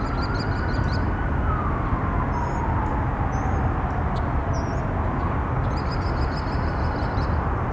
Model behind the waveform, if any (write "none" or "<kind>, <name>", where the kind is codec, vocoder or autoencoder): none